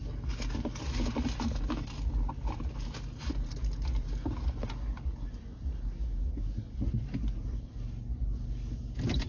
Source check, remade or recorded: recorded